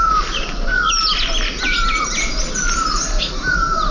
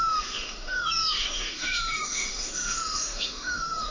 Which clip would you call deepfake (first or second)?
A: second